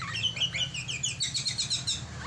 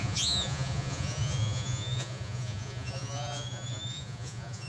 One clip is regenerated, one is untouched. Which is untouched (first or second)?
first